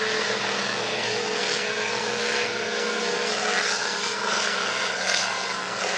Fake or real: fake